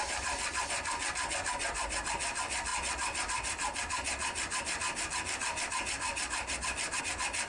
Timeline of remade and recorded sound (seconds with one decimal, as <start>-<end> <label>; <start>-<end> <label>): 0.0-7.5 remade